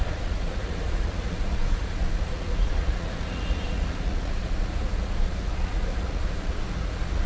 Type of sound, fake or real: fake